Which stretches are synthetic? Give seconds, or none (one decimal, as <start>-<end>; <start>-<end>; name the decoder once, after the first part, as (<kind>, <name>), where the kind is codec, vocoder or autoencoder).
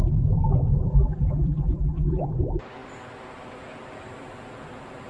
0.9-2.3 (vocoder, BigVGAN v2)